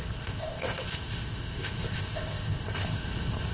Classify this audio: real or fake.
fake